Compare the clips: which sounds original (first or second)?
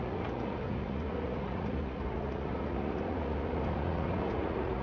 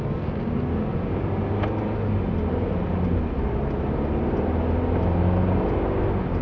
second